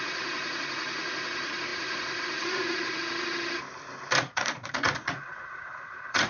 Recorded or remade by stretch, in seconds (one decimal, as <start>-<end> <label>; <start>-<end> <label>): 0.0-3.0 remade; 3.0-4.2 recorded; 4.2-6.3 remade